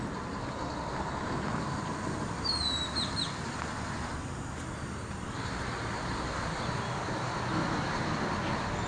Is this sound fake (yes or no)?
no